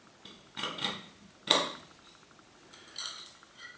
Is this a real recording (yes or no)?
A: yes